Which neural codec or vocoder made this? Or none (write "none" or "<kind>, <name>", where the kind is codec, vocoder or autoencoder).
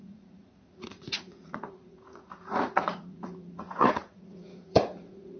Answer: vocoder, Vocos